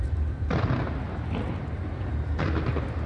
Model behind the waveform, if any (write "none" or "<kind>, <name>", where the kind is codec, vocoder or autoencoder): none